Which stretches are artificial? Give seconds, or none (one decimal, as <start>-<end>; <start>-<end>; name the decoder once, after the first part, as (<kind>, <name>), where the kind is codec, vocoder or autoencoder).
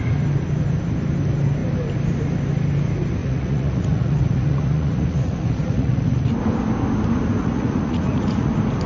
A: 3.2-6.3 (vocoder, Vocos); 7.4-8.5